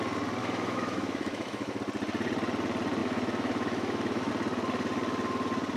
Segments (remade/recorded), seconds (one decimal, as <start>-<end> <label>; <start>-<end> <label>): 0.0-0.4 recorded; 0.4-1.8 remade; 1.8-3.0 recorded; 3.0-4.3 remade; 4.3-5.8 recorded